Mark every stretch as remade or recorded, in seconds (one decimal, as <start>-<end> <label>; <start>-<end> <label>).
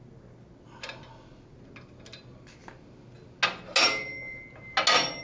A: 0.0-5.2 recorded